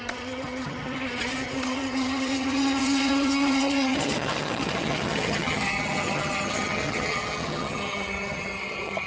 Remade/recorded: remade